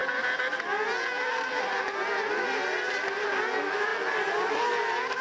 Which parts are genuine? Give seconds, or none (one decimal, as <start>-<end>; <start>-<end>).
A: 0.0-5.2